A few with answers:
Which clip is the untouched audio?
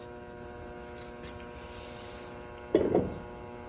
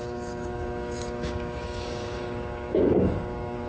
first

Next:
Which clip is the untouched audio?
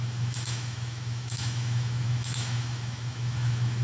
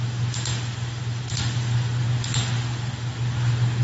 second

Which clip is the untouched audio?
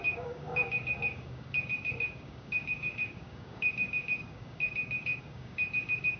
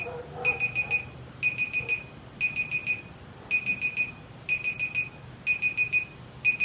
second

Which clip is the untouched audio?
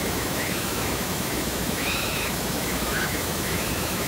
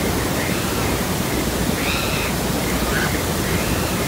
second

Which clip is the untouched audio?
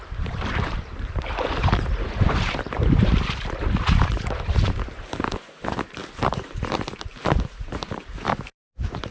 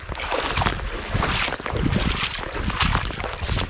second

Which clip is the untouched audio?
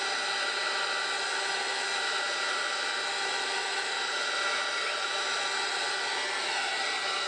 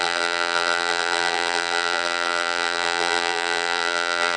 first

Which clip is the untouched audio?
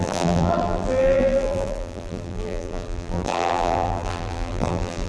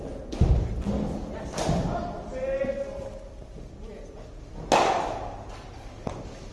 second